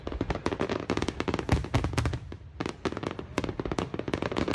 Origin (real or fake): real